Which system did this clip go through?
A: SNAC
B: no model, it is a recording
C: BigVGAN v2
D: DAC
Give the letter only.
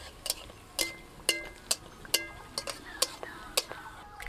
B